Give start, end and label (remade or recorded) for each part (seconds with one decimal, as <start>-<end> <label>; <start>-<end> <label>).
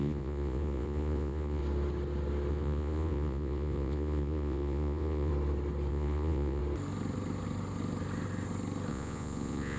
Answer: 0.0-1.6 remade; 1.6-2.5 recorded; 2.5-5.3 remade; 5.3-5.9 recorded; 5.9-6.6 remade; 6.6-8.9 recorded; 8.9-9.8 remade